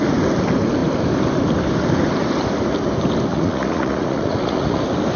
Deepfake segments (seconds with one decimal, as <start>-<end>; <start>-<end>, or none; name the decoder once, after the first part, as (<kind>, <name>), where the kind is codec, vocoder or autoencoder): 3.3-4.8 (vocoder, Vocos)